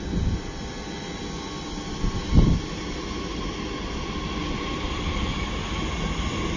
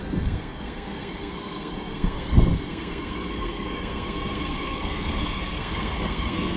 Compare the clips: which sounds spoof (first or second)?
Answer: second